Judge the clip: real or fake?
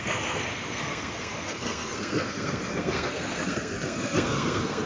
fake